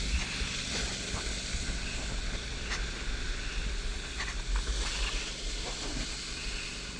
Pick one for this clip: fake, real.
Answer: real